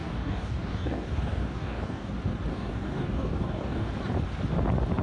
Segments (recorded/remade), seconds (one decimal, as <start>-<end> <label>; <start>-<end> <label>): 0.0-2.1 remade; 2.1-2.5 recorded; 2.5-3.9 remade; 3.9-5.0 recorded